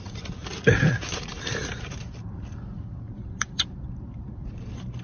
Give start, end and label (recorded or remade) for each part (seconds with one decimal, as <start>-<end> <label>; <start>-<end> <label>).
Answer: 0.0-0.4 remade; 0.4-0.9 recorded; 0.9-5.0 remade